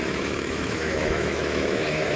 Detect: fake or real fake